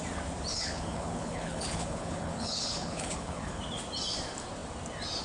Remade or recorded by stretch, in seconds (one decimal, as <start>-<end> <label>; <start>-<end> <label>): 0.0-0.5 recorded; 0.5-3.6 remade; 3.6-5.2 recorded